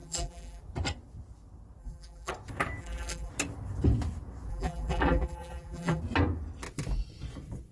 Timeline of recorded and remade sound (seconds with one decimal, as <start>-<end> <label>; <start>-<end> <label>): 0.0-0.6 remade; 0.6-1.8 recorded; 1.8-2.3 remade; 2.3-2.8 recorded; 2.8-3.3 remade; 3.3-4.5 recorded; 4.5-6.0 remade; 6.0-7.7 recorded